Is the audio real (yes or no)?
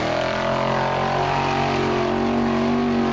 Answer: yes